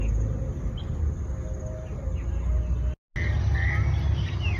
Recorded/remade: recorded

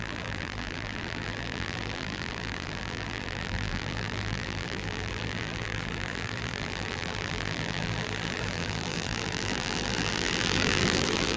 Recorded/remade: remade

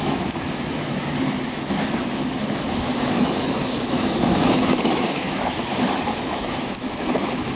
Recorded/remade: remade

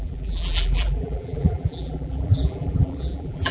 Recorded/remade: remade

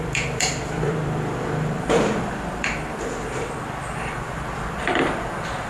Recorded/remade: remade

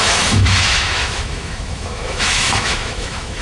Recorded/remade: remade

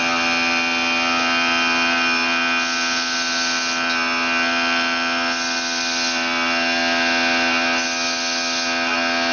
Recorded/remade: recorded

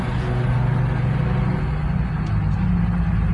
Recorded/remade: recorded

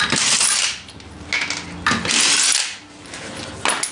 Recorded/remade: recorded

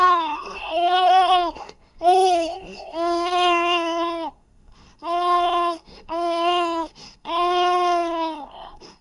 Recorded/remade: remade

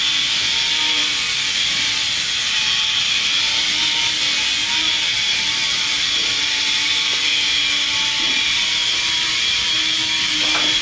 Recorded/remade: remade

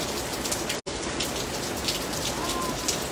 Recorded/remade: recorded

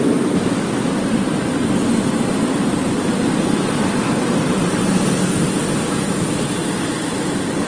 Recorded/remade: recorded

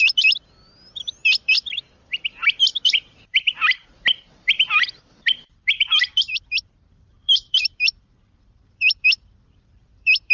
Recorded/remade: remade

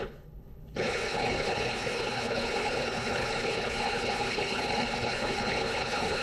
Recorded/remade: remade